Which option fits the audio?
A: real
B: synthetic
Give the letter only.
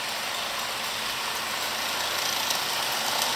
A